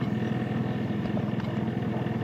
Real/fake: real